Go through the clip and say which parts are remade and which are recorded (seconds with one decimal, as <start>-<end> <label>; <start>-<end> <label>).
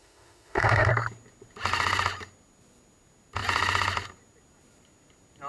0.0-0.9 remade; 0.9-5.5 recorded